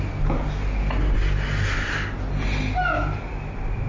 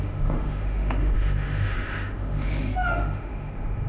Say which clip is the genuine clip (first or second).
first